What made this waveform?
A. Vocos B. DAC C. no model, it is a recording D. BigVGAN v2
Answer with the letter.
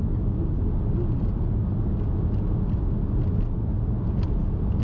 C